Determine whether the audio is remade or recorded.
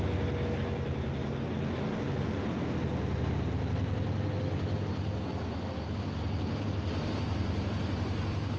recorded